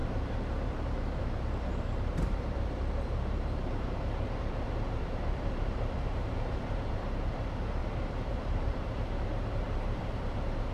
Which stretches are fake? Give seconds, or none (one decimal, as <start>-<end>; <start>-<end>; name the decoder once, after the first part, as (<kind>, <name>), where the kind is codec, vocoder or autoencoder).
0.0-7.8 (vocoder, BigVGAN v2); 8.3-10.7